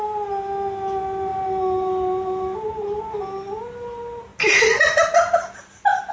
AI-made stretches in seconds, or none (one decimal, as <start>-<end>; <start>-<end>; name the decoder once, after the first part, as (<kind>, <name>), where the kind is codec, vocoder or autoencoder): none

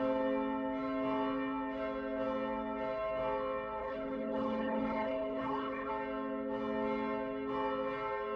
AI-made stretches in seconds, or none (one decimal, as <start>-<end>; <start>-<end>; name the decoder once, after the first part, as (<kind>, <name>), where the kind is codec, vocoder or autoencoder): 3.8-5.9 (codec, HILCodec)

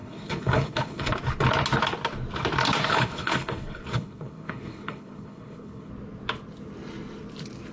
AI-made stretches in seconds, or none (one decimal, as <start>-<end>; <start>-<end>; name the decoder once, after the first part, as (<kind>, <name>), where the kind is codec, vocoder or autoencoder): 0.0-1.1 (codec, HILCodec); 2.9-5.9

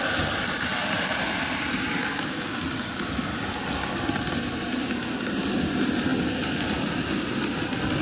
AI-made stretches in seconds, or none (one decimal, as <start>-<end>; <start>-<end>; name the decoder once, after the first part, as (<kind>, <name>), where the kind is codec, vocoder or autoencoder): none

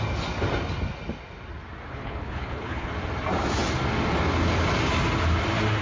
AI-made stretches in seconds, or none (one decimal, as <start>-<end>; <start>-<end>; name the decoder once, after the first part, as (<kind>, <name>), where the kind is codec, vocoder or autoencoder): 1.9-2.9 (codec, HILCodec)